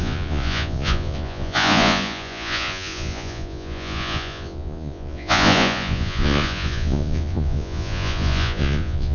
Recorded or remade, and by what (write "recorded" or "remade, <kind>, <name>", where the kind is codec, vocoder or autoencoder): remade, vocoder, Vocos